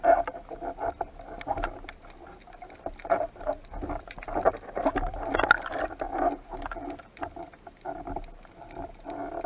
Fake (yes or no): no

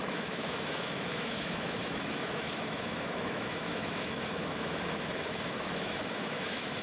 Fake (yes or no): yes